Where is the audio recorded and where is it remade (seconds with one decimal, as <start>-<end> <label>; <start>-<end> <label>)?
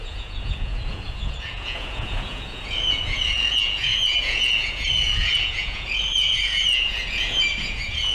0.0-8.1 remade